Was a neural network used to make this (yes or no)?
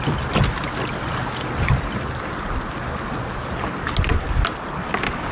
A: no